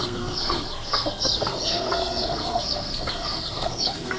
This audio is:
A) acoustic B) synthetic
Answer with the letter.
B